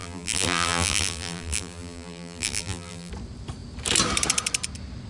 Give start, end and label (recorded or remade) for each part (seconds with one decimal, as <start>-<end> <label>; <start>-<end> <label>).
0.0-3.1 remade; 3.1-5.1 recorded